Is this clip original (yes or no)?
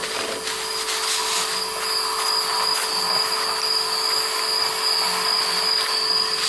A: yes